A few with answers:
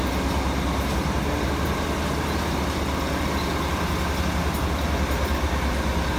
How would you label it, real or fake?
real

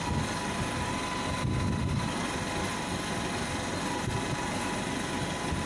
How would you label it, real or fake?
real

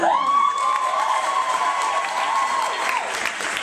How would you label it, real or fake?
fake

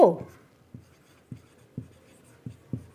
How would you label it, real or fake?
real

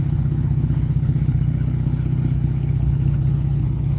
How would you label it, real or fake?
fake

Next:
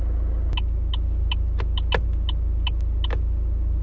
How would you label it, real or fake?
real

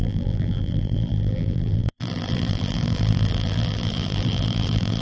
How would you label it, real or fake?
fake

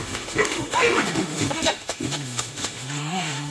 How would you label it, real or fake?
fake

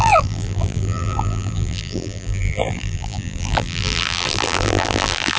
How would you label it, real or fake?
fake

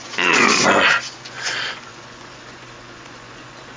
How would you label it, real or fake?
fake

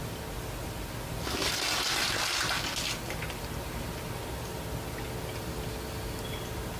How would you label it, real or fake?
real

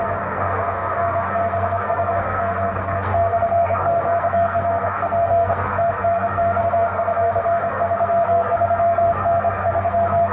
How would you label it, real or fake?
fake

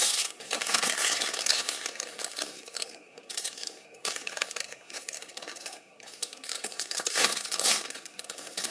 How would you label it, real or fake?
fake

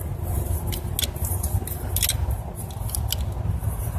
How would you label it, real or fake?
real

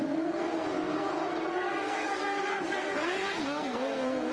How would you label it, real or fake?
fake